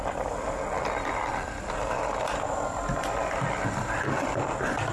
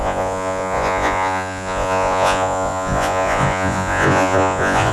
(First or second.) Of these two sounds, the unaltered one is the first